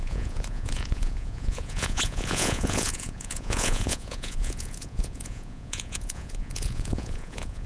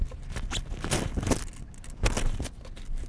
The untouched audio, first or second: second